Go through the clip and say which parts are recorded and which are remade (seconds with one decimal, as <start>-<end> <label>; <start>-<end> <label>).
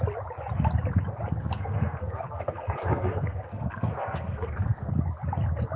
0.0-1.4 recorded; 1.4-4.9 remade; 4.9-5.8 recorded